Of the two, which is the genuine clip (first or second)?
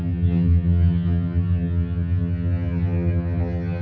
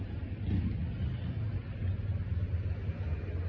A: second